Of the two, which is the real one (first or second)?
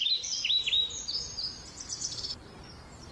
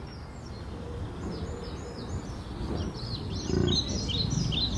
second